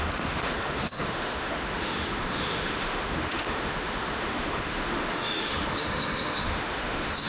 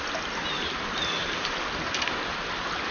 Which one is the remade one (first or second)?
first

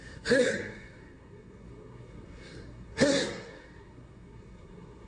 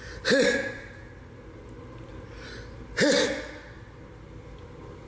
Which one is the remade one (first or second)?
first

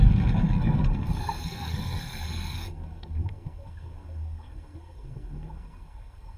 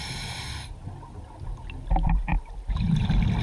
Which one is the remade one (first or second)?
first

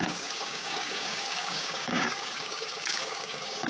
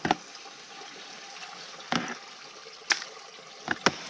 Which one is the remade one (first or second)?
first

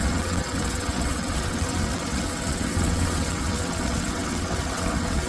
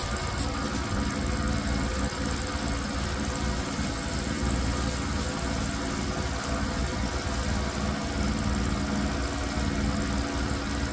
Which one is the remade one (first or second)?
first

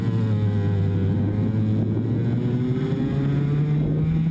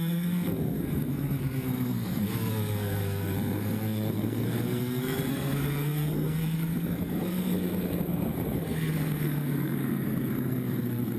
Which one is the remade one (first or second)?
second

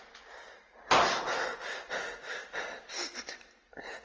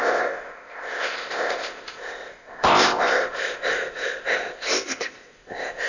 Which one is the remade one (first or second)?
second